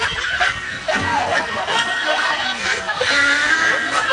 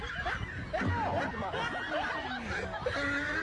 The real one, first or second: second